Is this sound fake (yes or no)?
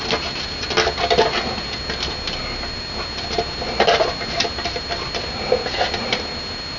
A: no